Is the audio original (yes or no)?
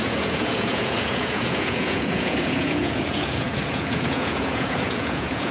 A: no